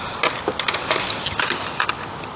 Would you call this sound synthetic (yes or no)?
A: no